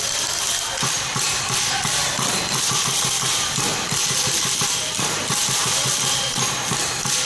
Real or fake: real